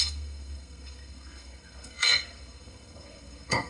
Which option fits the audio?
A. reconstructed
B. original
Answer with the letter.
A